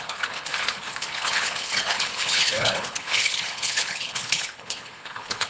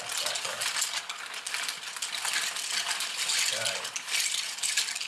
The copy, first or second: first